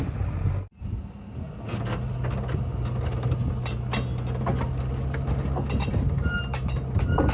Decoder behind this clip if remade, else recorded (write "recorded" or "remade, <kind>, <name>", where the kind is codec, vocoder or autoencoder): recorded